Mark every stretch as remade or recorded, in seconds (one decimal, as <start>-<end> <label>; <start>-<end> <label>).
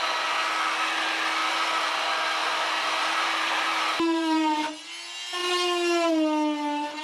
0.0-1.4 recorded; 1.4-1.9 remade; 1.9-2.4 recorded; 2.4-4.7 remade; 4.7-7.0 recorded